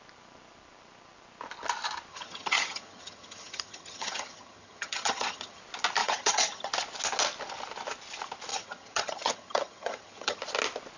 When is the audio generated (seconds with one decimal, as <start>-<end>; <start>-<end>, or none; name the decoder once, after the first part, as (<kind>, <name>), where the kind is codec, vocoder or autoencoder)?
2.1-5.6 (vocoder, HiFi-GAN); 6.0-6.7; 8.5-10.4